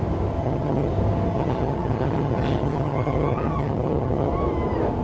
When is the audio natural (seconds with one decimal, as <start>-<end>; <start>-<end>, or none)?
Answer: 0.0-0.4; 0.9-1.3; 4.3-5.0